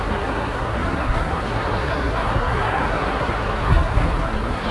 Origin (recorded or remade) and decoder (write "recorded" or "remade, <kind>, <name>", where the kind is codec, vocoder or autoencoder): remade, codec, SNAC